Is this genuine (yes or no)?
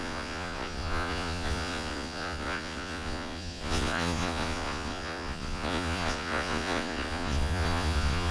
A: no